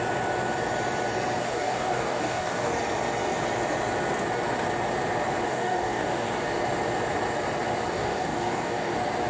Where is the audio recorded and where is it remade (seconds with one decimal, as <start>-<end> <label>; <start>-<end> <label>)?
0.0-1.4 recorded; 1.4-2.8 remade; 2.8-5.5 recorded; 5.5-6.3 remade; 6.3-7.9 recorded; 7.9-8.9 remade; 8.9-9.3 recorded